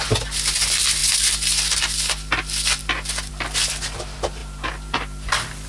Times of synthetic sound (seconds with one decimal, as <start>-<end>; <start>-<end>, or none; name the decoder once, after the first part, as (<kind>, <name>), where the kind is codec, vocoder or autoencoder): none